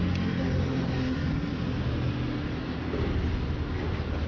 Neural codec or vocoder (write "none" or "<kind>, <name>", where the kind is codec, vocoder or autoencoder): none